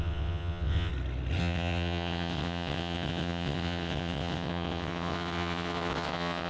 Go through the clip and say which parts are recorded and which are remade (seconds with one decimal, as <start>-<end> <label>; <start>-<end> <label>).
0.0-0.9 remade; 0.9-1.4 recorded; 1.4-6.5 remade